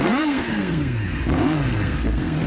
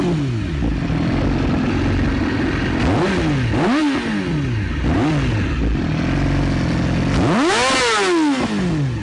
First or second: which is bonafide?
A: second